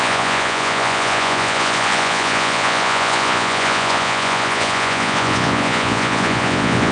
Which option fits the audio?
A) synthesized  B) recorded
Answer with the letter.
A